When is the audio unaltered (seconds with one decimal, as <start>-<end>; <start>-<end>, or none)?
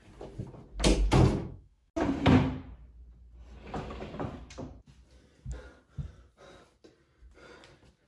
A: 0.0-1.4; 1.9-8.1